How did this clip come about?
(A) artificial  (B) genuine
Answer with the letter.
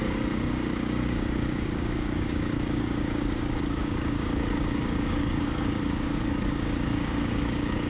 A